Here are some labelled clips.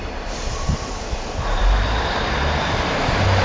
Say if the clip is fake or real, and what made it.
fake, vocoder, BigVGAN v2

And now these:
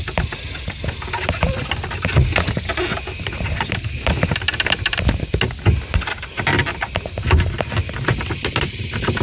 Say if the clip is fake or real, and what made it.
real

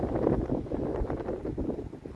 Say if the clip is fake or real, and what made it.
real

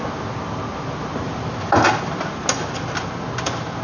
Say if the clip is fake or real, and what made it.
real